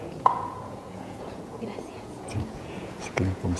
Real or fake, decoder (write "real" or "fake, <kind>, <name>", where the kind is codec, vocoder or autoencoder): fake, vocoder, Vocos